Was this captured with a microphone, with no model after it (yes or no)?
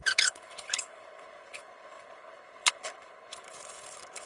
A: no